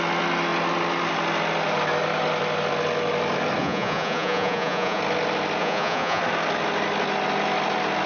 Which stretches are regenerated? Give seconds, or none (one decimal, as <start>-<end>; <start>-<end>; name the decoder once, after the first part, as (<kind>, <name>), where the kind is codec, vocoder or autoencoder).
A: 3.6-5.0 (vocoder, Vocos); 5.6-6.2

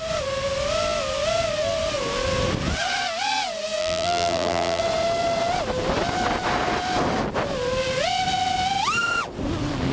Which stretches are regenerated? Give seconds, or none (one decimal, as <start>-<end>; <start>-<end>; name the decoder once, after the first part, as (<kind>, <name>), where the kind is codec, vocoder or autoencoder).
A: 3.8-4.8 (vocoder, BigVGAN v2)

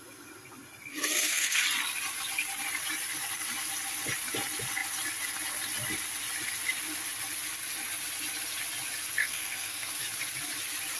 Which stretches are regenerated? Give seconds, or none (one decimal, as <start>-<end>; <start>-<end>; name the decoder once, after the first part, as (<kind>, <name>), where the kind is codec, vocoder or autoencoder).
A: 0.9-1.6 (codec, SNAC); 9.2-9.9